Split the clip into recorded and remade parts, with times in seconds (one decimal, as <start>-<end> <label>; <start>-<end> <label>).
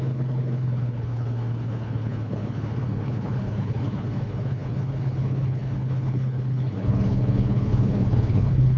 0.0-8.8 remade